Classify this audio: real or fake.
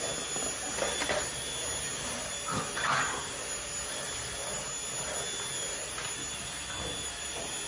real